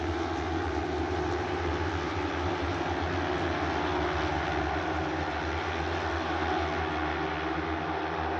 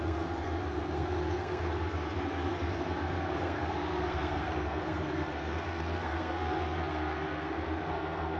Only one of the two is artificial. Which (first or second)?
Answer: second